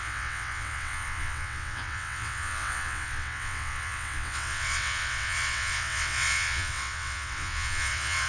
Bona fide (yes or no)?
no